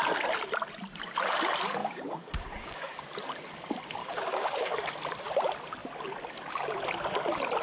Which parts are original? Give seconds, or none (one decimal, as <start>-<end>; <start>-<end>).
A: 0.0-1.8; 3.0-4.0; 4.7-7.6